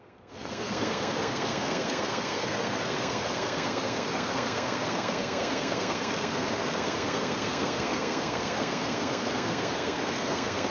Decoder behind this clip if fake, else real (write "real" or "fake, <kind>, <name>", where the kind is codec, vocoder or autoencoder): fake, codec, SNAC